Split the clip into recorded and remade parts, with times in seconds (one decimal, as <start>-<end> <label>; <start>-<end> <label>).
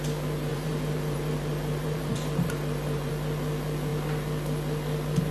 0.0-0.5 recorded; 0.5-3.1 remade; 3.1-5.3 recorded